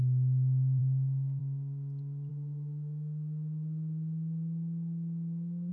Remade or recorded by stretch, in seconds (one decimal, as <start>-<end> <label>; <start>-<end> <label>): 0.0-0.8 recorded; 0.8-1.4 remade; 1.4-2.3 recorded; 2.3-5.7 remade